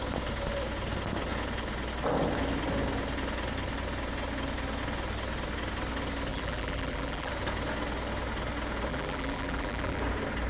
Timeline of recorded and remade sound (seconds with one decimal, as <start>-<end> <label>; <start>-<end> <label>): 0.0-6.3 recorded; 6.3-7.3 remade; 7.3-8.9 recorded; 8.9-10.0 remade; 10.0-10.5 recorded